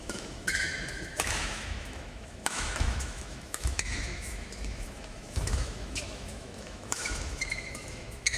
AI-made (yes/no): yes